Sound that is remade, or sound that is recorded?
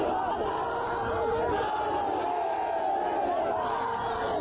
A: recorded